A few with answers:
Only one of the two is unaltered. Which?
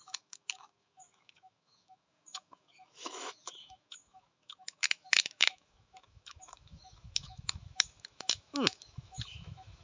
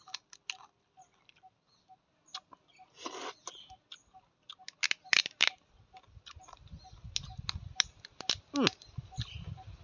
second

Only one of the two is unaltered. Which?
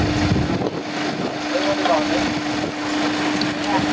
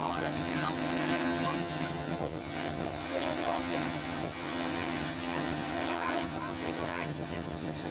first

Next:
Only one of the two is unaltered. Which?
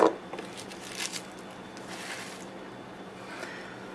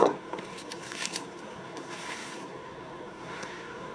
first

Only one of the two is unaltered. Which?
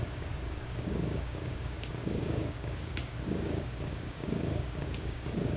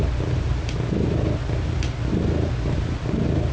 second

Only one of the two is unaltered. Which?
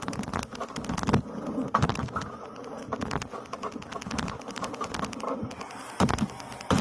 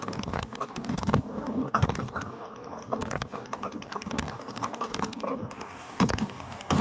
first